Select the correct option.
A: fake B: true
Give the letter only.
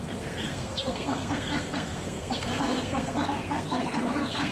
A